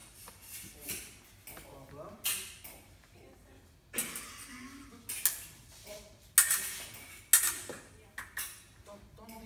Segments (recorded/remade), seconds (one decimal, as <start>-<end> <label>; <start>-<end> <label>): 0.0-9.5 recorded